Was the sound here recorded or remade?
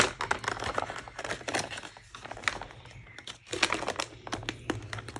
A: recorded